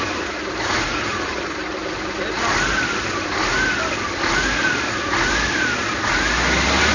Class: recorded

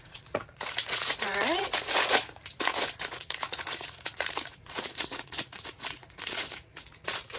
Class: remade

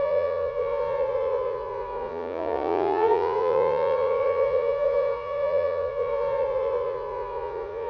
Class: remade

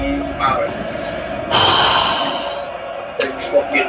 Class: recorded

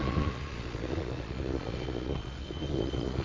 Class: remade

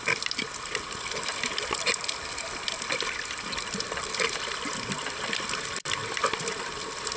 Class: recorded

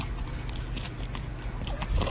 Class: recorded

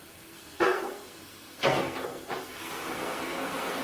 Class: remade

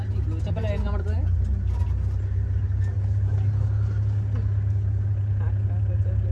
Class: recorded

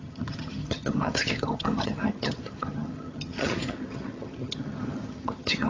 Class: remade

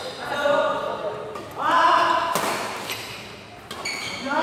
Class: recorded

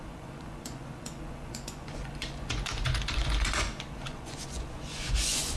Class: remade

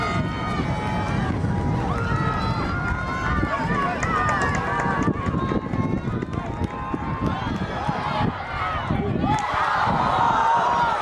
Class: recorded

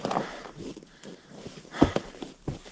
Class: remade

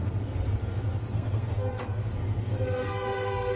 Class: remade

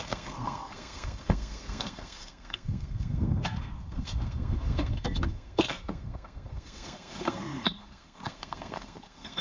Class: remade